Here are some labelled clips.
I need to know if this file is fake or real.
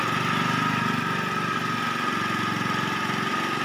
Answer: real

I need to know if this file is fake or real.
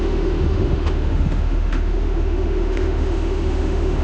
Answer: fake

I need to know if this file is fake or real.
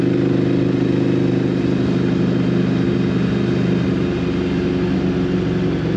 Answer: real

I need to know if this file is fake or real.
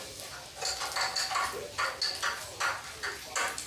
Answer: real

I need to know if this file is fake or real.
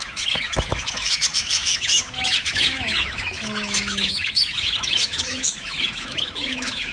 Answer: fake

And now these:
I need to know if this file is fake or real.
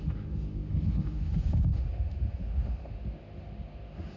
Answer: fake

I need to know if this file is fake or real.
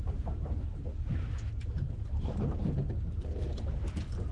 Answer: real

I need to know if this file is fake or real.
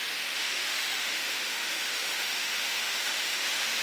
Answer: fake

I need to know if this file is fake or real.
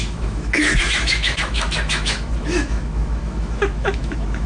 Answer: fake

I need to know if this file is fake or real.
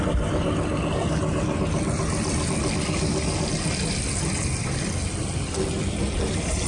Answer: real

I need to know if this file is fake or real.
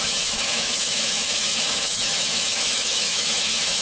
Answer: fake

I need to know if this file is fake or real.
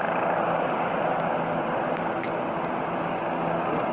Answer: real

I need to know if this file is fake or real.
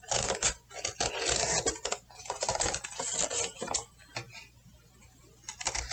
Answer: real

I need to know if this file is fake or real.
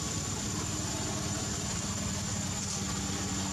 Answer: real